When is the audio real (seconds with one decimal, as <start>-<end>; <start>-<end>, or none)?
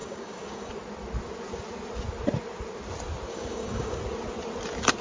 0.7-3.3; 4.0-5.0